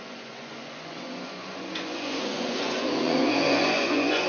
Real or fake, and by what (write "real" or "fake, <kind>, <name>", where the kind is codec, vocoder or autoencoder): fake, vocoder, Vocos